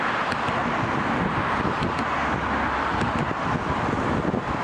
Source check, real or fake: real